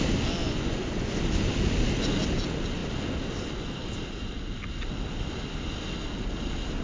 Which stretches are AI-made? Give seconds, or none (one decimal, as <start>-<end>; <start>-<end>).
0.4-1.2